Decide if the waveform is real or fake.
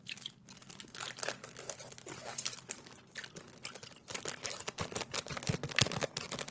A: real